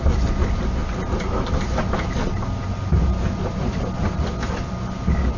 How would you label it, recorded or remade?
recorded